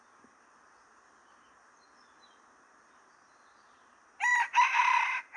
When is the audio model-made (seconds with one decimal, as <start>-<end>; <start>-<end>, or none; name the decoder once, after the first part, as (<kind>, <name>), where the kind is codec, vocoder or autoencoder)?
none